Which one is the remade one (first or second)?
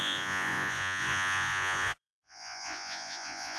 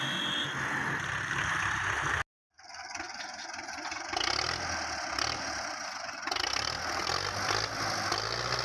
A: first